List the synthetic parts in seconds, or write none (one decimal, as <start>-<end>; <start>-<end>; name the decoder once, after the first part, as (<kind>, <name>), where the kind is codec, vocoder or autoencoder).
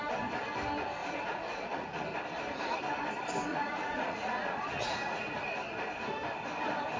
1.0-2.0 (vocoder, Vocos); 3.5-5.5